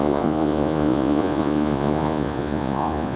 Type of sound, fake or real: fake